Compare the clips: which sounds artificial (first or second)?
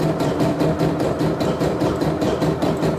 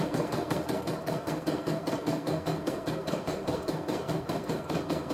second